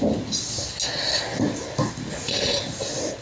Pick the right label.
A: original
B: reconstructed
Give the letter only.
A